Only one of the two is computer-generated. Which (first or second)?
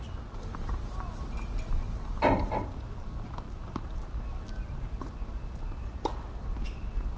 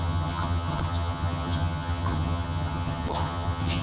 second